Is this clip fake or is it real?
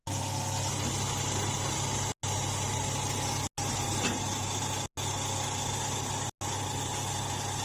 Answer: real